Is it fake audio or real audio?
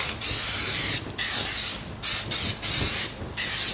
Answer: real